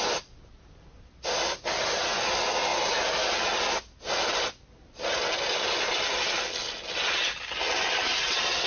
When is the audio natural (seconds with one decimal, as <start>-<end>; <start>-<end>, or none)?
0.0-2.7; 3.3-8.7